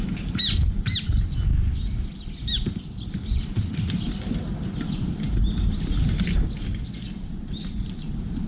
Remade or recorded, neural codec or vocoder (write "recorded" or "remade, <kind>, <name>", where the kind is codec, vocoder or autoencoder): recorded